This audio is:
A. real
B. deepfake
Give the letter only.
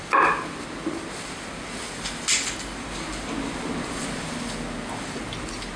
A